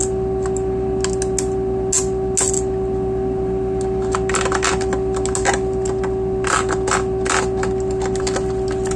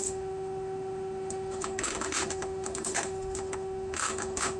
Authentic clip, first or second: first